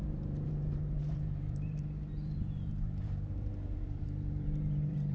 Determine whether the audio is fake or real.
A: fake